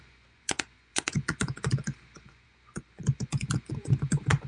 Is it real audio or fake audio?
fake